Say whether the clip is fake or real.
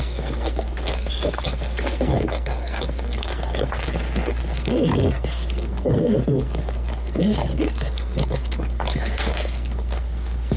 fake